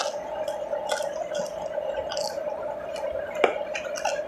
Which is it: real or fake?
real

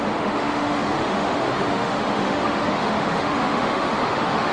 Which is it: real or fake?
fake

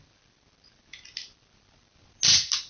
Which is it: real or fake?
real